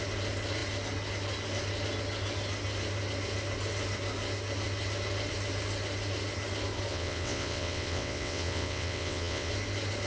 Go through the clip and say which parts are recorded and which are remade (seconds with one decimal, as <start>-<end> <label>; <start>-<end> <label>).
0.0-6.9 recorded; 6.9-9.5 remade; 9.5-10.1 recorded